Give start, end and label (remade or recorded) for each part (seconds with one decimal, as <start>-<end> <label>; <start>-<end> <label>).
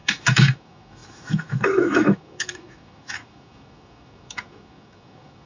0.0-5.5 remade